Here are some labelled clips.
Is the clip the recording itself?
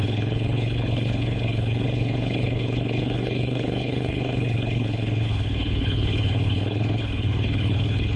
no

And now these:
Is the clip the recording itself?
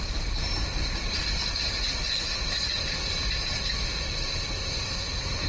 no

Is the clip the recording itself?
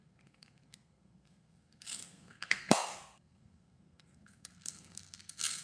no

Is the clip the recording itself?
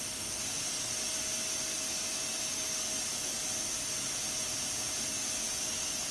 yes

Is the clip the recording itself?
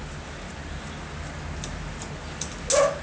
yes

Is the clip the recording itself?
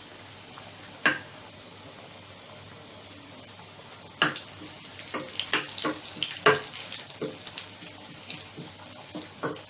yes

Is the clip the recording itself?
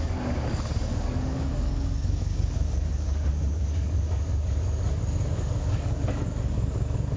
no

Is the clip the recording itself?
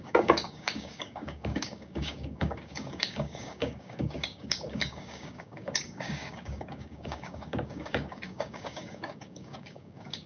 no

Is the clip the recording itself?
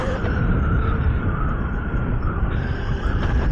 no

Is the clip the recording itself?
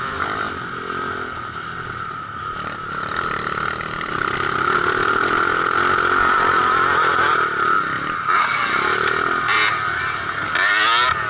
yes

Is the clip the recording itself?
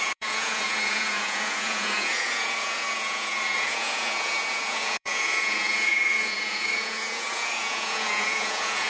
no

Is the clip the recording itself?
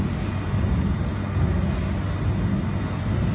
yes